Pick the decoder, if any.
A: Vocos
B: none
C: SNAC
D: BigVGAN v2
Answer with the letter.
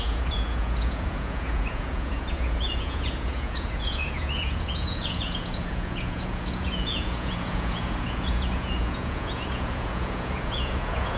A